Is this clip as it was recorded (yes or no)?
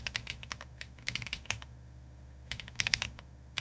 no